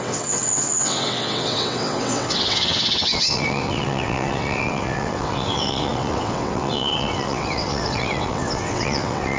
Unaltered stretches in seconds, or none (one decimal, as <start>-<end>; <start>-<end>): none